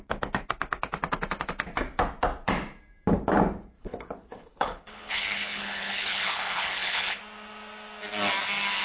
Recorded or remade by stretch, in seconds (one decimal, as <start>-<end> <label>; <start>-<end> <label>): 0.0-3.8 recorded; 3.8-7.2 remade; 7.2-8.8 recorded